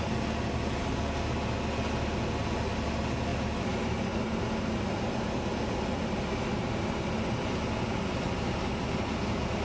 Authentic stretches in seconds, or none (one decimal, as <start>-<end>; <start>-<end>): 0.0-9.6